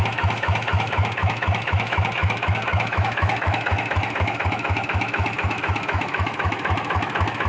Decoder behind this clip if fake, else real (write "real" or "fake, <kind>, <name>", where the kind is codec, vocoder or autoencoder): fake, autoencoder, DAC-VAE